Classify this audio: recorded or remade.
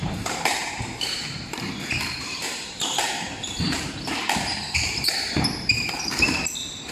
remade